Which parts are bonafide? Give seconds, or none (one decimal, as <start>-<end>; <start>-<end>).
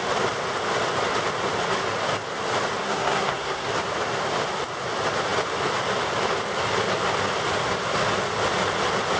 0.0-2.8; 3.7-9.2